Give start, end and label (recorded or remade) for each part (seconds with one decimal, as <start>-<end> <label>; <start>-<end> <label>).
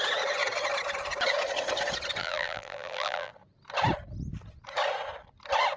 0.0-2.2 recorded; 2.2-3.3 remade; 3.3-5.8 recorded